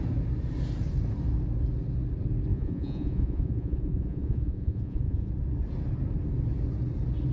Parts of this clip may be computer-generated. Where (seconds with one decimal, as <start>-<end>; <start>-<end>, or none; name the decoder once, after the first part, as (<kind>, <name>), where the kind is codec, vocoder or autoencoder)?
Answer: 2.5-5.3 (vocoder, Vocos)